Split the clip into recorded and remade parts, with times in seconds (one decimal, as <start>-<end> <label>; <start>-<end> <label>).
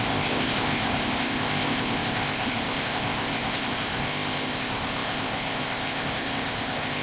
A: 0.0-7.0 remade